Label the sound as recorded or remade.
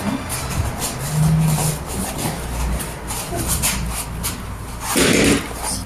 recorded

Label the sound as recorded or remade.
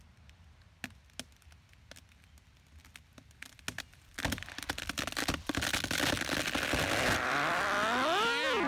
recorded